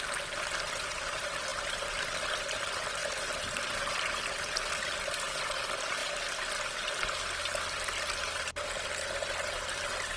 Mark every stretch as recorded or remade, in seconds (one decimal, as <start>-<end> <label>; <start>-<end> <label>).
0.0-10.2 recorded